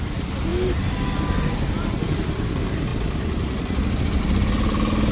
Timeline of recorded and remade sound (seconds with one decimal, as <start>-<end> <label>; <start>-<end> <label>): 0.0-5.1 recorded